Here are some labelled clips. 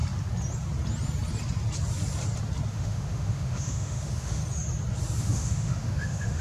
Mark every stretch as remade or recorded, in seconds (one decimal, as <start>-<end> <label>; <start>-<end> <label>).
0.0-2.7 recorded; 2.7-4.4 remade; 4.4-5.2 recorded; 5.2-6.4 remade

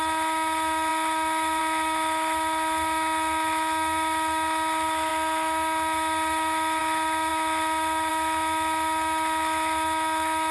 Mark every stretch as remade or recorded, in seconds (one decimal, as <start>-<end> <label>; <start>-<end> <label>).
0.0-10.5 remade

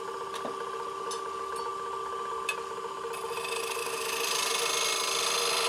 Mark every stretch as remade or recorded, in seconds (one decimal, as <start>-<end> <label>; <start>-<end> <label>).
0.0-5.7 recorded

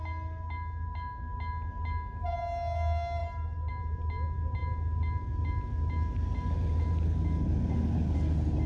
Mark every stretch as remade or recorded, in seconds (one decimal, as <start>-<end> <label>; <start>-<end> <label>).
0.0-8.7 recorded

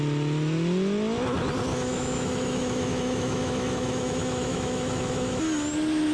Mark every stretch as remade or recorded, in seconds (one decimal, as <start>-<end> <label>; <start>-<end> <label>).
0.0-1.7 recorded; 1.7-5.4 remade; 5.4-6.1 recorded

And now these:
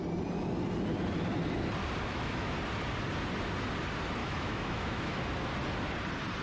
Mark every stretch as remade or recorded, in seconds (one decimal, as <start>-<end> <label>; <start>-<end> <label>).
0.0-2.0 recorded; 2.0-2.5 remade; 2.5-4.2 recorded; 4.2-5.2 remade; 5.2-6.4 recorded